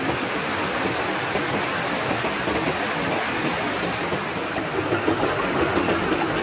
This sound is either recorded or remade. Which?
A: recorded